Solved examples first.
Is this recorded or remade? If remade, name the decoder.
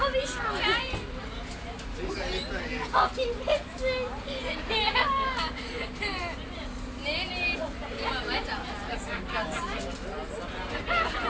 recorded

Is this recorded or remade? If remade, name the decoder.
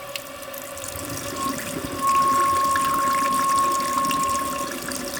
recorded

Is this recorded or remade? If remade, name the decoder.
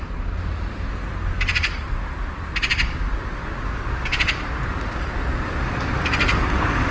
remade, vocoder, BigVGAN v2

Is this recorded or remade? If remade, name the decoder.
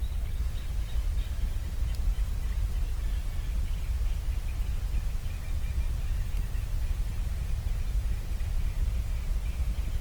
recorded